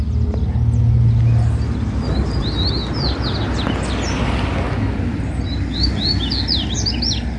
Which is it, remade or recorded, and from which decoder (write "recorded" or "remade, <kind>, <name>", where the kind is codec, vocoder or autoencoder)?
recorded